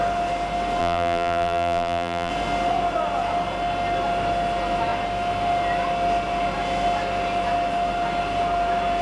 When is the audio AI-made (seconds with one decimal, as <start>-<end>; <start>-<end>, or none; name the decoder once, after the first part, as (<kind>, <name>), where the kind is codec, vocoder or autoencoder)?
0.8-2.3 (vocoder, BigVGAN v2)